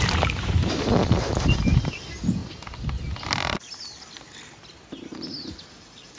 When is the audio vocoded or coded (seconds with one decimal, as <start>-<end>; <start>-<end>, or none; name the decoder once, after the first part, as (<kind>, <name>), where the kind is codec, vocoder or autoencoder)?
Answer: none